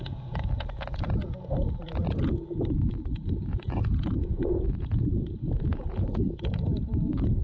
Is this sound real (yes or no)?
no